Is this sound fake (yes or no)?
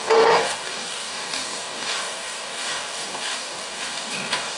yes